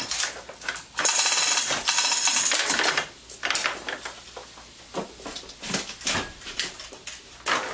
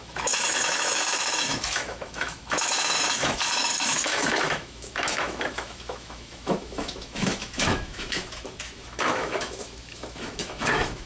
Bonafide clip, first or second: first